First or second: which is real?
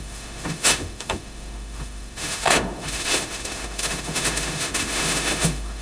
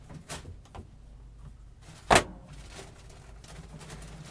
second